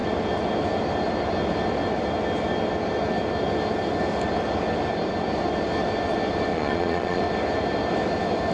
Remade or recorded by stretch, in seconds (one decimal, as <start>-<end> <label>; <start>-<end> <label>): 0.0-6.5 recorded; 6.5-7.2 remade; 7.2-8.5 recorded